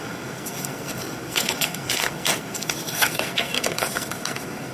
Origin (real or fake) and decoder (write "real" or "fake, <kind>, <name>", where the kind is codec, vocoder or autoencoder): fake, codec, SNAC